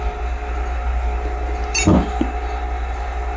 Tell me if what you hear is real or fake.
real